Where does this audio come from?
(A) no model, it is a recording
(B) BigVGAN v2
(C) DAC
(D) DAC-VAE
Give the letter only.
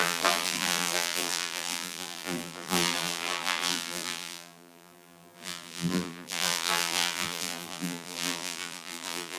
B